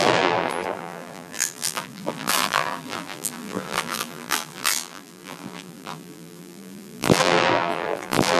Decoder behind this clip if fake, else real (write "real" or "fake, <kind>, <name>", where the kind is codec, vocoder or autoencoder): fake, vocoder, BigVGAN v2